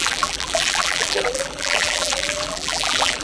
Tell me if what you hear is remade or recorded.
remade